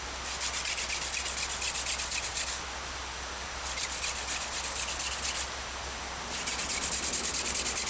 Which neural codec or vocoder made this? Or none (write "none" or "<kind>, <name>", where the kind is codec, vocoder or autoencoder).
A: none